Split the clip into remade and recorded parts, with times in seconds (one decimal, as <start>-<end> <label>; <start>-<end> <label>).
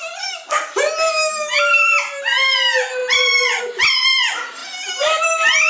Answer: 0.0-5.7 recorded